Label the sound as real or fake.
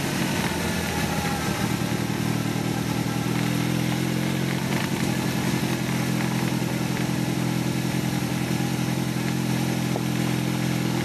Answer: real